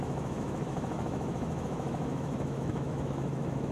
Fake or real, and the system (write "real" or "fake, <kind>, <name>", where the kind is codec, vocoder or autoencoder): fake, autoencoder, DAC-VAE